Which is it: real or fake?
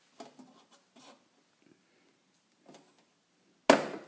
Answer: real